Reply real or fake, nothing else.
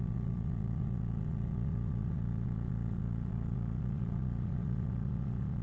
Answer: fake